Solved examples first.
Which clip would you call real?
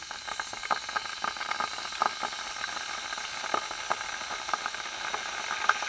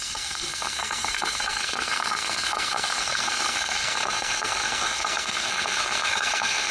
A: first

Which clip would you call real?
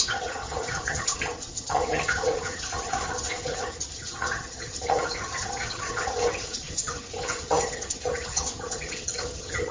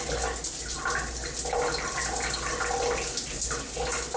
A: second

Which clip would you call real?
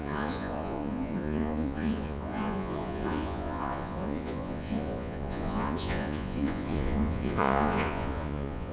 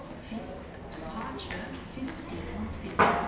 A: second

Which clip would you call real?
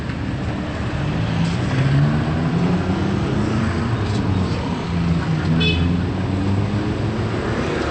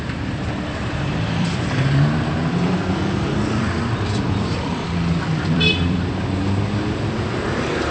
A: first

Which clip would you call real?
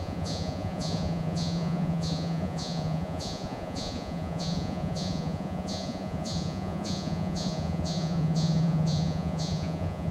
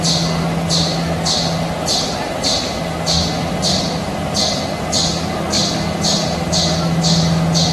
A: second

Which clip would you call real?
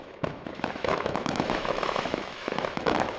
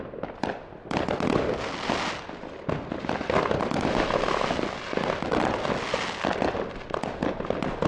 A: second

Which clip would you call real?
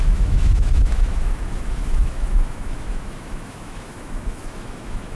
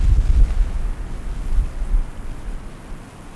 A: second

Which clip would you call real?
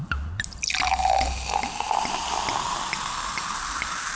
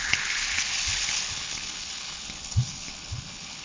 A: first